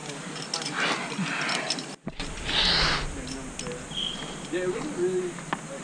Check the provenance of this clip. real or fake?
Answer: real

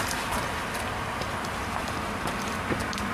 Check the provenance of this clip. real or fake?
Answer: real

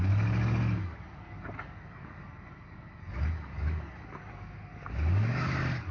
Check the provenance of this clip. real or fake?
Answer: fake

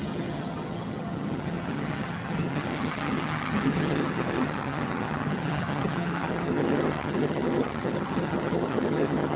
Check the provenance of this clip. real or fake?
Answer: fake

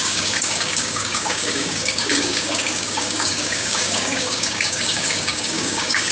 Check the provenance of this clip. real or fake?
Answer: fake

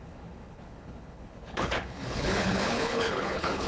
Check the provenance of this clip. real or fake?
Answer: fake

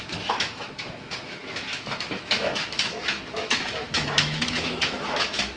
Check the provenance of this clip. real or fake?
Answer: fake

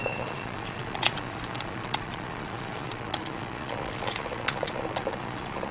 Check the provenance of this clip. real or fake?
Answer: fake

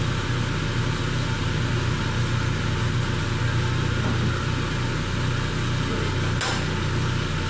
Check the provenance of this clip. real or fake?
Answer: real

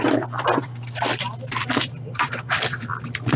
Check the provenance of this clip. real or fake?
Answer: fake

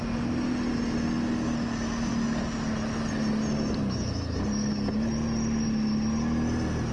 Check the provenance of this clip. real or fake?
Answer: real